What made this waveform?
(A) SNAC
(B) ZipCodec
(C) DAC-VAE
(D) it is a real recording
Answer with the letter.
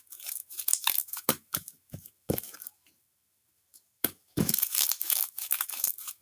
C